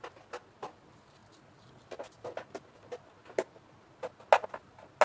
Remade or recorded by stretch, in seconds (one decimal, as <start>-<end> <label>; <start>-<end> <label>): 0.0-5.0 recorded